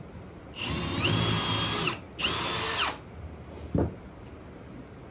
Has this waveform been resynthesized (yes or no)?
no